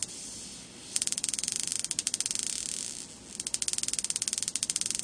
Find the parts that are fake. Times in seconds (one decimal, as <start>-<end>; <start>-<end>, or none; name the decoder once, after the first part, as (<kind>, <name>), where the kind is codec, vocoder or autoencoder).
0.6-1.7 (vocoder, BigVGAN v2)